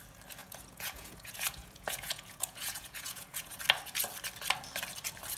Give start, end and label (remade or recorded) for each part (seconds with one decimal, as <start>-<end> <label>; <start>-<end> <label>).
0.0-0.4 recorded; 0.4-3.6 remade; 3.6-5.4 recorded